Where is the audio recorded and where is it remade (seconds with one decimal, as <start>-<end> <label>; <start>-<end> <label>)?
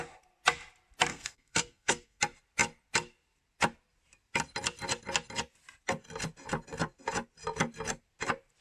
0.0-1.1 recorded; 1.1-2.2 remade; 2.2-8.6 recorded